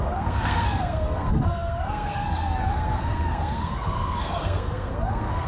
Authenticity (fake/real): fake